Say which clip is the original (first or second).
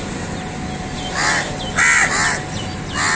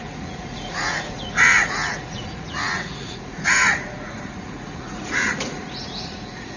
first